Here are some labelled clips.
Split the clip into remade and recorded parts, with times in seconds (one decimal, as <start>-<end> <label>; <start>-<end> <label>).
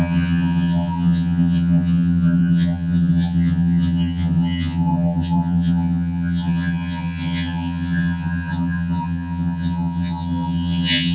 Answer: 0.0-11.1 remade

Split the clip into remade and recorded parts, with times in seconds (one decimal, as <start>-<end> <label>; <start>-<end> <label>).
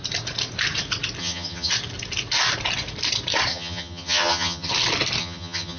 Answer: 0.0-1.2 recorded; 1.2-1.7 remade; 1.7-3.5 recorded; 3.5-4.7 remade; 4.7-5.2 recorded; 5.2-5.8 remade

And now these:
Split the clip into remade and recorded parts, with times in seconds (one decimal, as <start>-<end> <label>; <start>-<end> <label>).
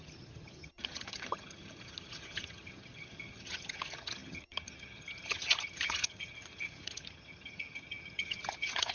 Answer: 0.0-8.9 remade